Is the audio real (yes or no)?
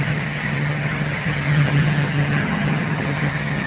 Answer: no